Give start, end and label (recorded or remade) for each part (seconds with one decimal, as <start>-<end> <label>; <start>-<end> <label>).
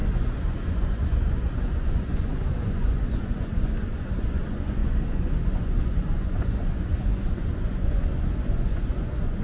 0.0-9.4 remade